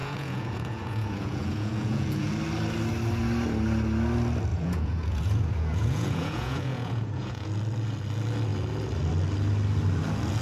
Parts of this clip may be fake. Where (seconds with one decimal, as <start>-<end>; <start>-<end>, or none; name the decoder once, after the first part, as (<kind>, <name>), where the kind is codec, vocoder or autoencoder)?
0.0-2.3 (vocoder, Vocos); 4.5-7.5